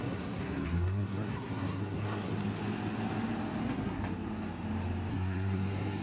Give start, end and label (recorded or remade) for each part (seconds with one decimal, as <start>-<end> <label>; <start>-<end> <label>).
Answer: 0.0-2.3 remade; 2.3-3.6 recorded; 3.6-4.0 remade; 4.0-5.1 recorded; 5.1-6.0 remade